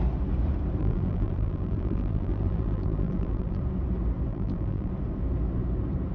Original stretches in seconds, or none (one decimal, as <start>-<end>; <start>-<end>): 0.0-0.8; 3.6-4.3; 4.9-6.1